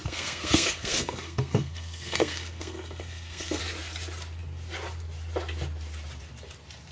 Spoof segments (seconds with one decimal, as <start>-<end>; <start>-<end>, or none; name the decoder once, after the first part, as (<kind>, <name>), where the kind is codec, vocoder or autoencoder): 0.0-3.6 (codec, SNAC)